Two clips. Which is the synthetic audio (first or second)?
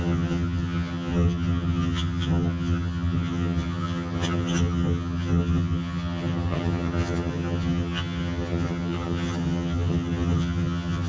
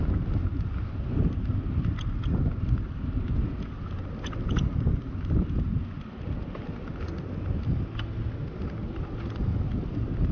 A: first